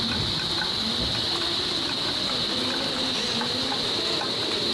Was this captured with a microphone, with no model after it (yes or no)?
yes